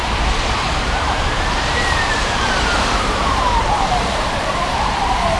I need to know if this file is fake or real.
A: fake